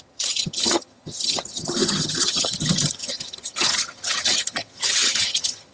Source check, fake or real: fake